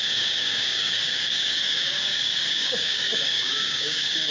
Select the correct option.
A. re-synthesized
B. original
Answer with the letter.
A